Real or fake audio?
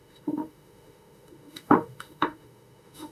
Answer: fake